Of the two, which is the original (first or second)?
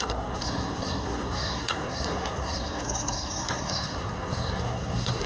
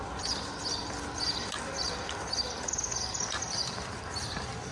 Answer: second